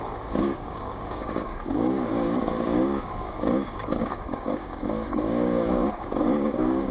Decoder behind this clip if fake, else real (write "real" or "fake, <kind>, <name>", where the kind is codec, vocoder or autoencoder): fake, codec, DAC